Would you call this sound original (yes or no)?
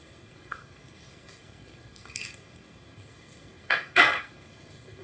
no